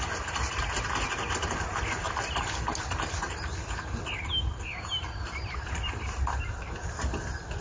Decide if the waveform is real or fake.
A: real